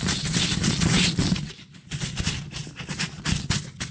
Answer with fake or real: real